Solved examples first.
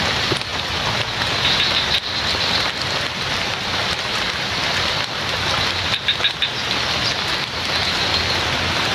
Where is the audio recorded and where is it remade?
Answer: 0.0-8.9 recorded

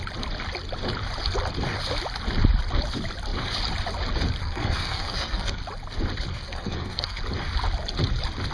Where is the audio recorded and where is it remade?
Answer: 0.0-4.4 recorded; 4.4-5.6 remade; 5.6-6.3 recorded; 6.3-7.2 remade; 7.2-8.5 recorded

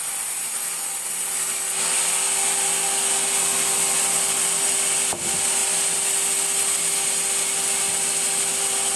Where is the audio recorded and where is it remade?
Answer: 0.0-9.0 recorded

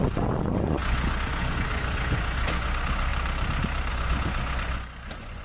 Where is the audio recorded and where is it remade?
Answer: 0.0-3.1 remade; 3.1-3.9 recorded; 3.9-5.4 remade

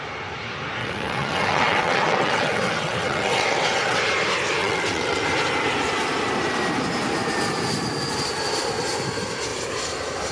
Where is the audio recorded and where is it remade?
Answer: 0.0-0.8 recorded; 0.8-4.0 remade; 4.0-4.6 recorded; 4.6-5.2 remade; 5.2-10.3 recorded

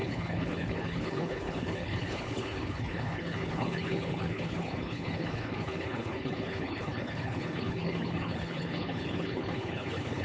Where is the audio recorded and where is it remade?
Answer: 0.0-10.2 remade

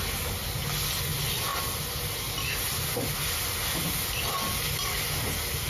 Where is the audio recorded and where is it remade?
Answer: 0.0-5.7 recorded

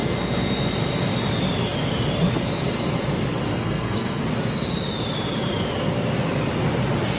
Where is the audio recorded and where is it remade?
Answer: 0.0-3.5 recorded; 3.5-4.2 remade; 4.2-7.2 recorded